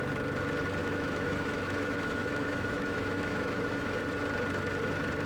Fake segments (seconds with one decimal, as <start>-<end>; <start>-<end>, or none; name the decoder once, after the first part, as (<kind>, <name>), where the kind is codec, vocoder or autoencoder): 0.8-4.0 (autoencoder, DAC-VAE)